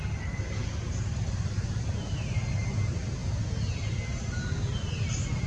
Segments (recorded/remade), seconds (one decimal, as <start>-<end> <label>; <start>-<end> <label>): 0.0-5.5 recorded